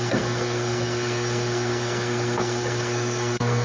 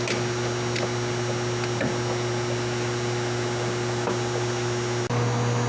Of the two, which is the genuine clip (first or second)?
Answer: second